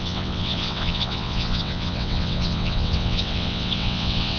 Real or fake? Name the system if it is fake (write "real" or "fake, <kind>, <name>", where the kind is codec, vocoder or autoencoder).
fake, vocoder, WaveNeXt